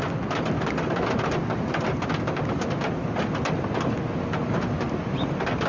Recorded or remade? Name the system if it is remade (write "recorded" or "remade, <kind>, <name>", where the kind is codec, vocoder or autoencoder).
recorded